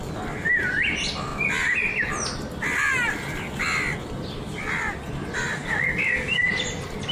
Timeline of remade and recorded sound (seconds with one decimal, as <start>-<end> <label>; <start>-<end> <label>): 0.0-5.6 recorded; 5.6-6.5 remade; 6.5-7.1 recorded